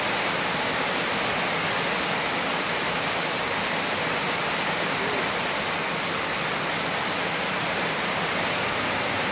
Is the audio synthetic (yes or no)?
no